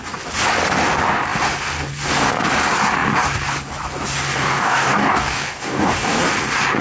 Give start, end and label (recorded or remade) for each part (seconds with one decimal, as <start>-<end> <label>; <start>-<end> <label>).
0.0-4.3 recorded; 4.3-6.2 remade; 6.2-6.8 recorded